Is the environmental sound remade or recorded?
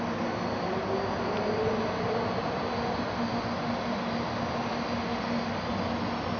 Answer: recorded